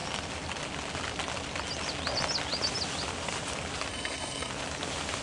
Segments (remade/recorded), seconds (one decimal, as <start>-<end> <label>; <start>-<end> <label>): 0.0-3.9 recorded; 3.9-4.5 remade; 4.5-5.2 recorded